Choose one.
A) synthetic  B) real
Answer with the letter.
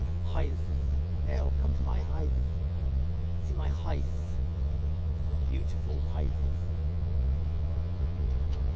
A